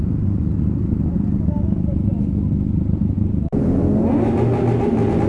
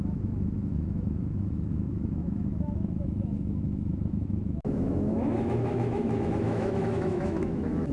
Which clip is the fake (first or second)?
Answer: second